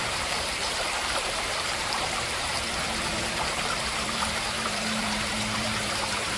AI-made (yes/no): yes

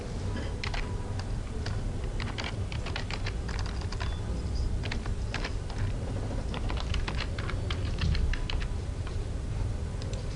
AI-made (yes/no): yes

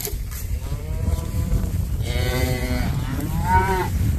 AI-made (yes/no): yes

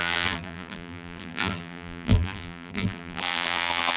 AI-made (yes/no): yes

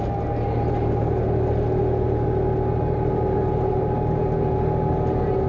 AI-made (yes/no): no